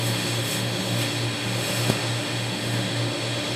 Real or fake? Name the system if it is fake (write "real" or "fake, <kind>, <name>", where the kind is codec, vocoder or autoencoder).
fake, autoencoder, DAC-VAE